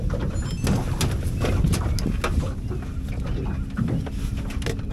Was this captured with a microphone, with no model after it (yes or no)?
yes